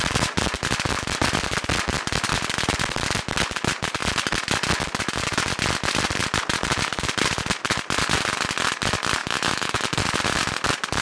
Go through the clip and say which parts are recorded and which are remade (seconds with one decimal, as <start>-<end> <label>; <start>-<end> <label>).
0.0-9.2 recorded; 9.2-9.8 remade; 9.8-11.0 recorded